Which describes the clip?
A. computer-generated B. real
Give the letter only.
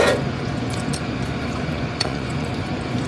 A